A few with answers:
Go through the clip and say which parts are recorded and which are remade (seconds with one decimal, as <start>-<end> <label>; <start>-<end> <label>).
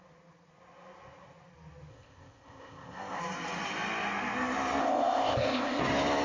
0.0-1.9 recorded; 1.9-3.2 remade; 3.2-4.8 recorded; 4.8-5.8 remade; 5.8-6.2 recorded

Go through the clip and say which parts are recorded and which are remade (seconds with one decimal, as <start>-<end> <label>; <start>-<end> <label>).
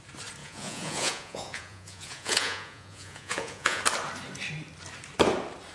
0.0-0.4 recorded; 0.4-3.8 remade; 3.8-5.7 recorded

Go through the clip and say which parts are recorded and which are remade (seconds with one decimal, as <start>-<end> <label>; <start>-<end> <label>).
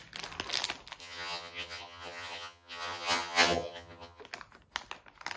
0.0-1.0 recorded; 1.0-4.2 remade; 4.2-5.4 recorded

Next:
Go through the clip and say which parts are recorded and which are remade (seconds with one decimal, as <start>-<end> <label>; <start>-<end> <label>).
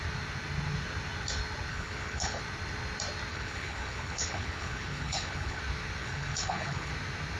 0.0-1.7 recorded; 1.7-2.4 remade; 2.4-3.3 recorded; 3.3-5.6 remade; 5.6-6.0 recorded; 6.0-6.9 remade; 6.9-7.4 recorded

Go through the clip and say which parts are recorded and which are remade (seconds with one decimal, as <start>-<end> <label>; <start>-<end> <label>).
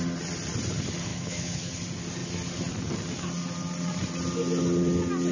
0.0-1.1 recorded; 1.1-1.7 remade; 1.7-5.3 recorded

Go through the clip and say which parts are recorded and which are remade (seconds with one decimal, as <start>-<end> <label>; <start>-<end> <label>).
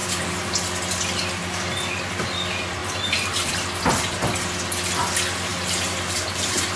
0.0-0.5 remade; 0.5-2.8 recorded; 2.8-3.5 remade; 3.5-5.5 recorded; 5.5-6.8 remade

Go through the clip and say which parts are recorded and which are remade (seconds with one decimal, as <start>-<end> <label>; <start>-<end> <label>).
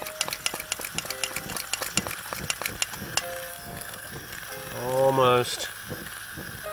0.0-3.5 recorded; 3.5-4.1 remade; 4.1-6.7 recorded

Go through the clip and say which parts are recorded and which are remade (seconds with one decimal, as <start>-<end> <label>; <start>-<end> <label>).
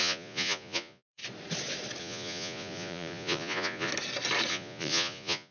0.0-1.2 remade; 1.2-2.0 recorded; 2.0-3.9 remade; 3.9-4.5 recorded; 4.5-5.5 remade